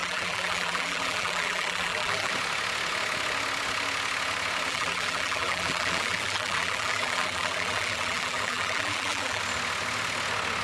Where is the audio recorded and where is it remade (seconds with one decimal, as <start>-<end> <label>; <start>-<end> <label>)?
0.0-2.3 remade; 2.3-4.7 recorded; 4.7-9.4 remade; 9.4-10.6 recorded